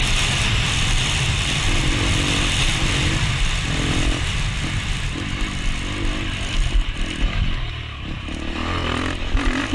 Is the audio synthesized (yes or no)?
no